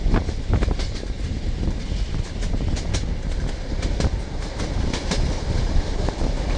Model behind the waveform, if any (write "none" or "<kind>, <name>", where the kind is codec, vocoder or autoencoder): none